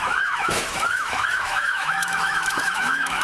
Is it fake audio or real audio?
fake